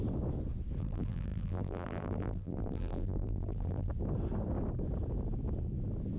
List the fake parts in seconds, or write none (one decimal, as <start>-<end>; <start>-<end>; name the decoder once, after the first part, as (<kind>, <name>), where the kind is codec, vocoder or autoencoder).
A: 0.8-3.9 (vocoder, BigVGAN v2)

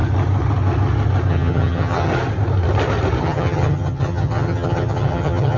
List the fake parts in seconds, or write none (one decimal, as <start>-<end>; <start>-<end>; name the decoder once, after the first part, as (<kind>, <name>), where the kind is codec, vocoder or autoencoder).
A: 1.3-2.1 (vocoder, HiFi-GAN); 3.2-5.6

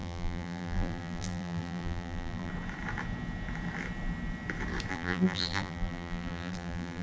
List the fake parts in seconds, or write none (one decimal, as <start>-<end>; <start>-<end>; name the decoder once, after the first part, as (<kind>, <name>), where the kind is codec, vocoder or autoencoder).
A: 0.0-2.5 (vocoder, BigVGAN v2); 4.9-7.0

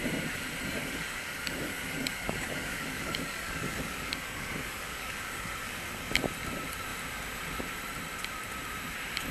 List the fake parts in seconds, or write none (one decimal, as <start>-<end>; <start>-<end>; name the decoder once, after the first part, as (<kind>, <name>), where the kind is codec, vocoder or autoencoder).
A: 0.8-6.1 (codec, DAC)